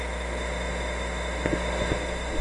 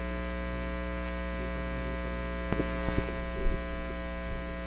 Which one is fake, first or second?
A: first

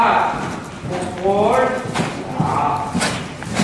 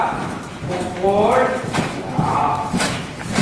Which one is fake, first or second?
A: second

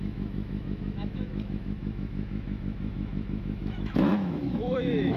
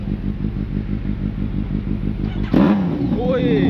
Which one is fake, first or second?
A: first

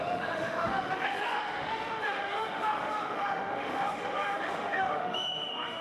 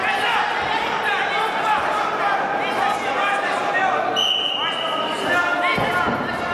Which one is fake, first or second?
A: first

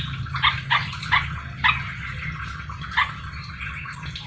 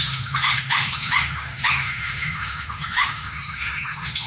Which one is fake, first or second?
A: second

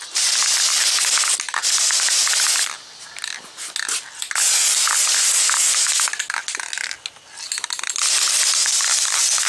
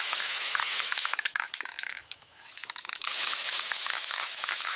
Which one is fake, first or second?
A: second